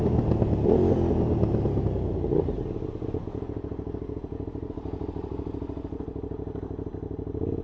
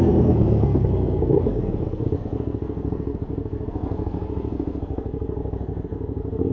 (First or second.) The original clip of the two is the first